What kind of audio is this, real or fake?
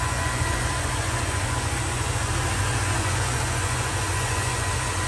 fake